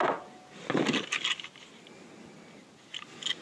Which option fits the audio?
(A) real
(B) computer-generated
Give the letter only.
A